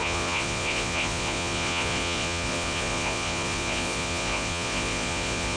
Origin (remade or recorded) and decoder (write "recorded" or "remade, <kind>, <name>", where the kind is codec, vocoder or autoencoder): remade, vocoder, Vocos